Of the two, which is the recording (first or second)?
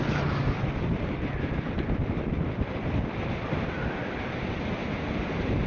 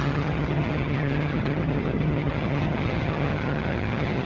first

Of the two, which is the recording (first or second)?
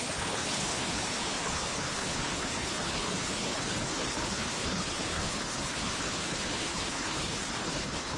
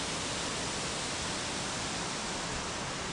second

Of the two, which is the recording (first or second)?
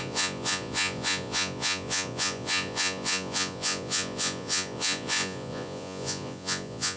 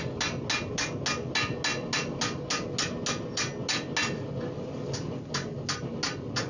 second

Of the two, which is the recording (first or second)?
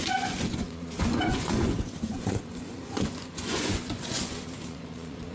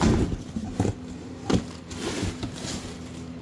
second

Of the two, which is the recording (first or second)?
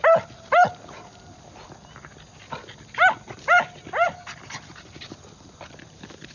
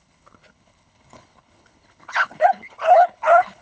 first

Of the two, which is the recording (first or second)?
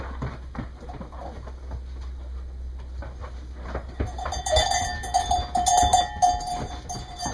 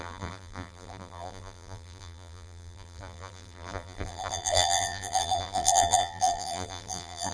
first